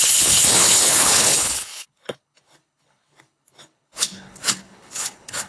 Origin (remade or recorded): remade